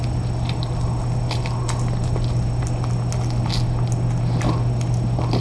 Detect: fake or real real